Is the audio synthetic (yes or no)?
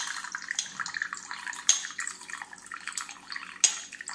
no